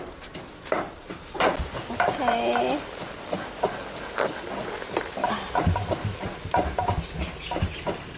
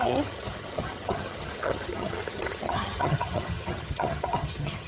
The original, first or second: first